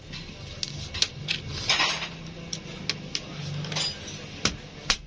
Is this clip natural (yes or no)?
yes